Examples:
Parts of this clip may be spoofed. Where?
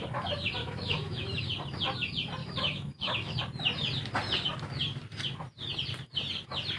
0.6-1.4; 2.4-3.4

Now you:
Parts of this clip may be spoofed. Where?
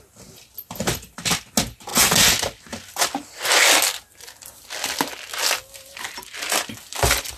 none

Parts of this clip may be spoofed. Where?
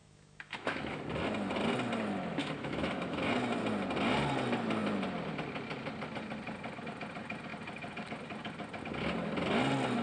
0.0-1.0; 2.4-3.3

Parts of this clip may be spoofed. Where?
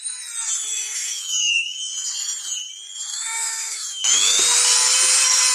0.7-1.9; 3.1-4.4